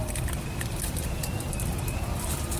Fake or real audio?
fake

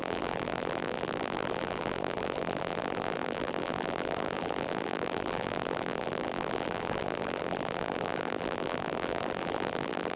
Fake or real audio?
fake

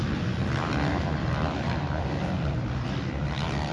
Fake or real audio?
fake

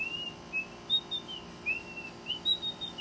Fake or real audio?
real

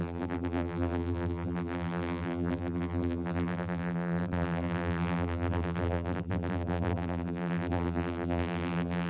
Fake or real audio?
fake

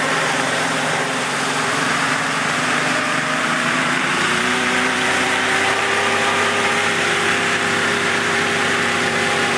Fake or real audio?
fake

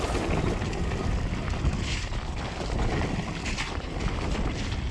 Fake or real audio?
real